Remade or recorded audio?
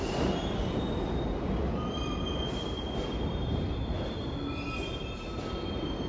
recorded